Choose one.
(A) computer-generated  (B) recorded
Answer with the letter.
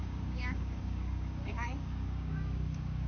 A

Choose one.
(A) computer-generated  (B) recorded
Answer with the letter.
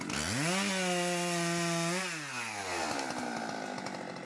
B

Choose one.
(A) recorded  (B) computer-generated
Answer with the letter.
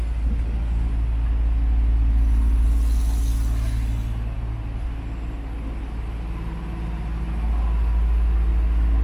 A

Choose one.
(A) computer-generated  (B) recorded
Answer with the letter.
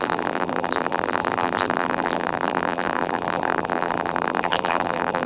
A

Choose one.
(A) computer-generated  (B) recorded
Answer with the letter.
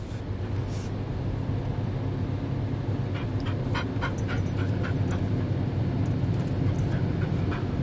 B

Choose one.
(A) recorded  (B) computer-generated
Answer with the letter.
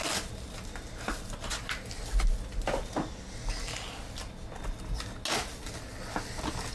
A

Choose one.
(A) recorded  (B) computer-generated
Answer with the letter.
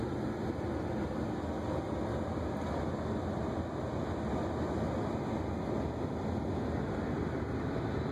A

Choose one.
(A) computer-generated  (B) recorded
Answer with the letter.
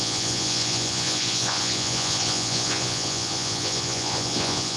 A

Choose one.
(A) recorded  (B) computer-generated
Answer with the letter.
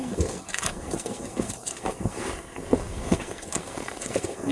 B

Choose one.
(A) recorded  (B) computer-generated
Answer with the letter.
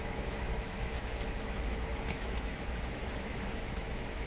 B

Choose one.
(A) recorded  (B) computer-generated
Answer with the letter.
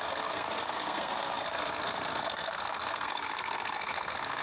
B